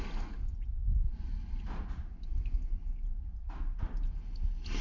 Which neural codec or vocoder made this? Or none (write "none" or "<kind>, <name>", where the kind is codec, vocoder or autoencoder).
none